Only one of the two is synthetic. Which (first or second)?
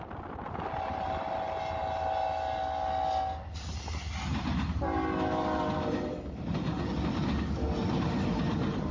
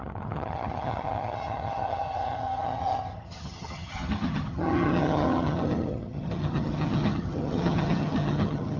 second